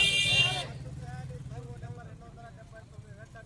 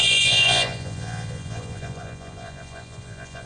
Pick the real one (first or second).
first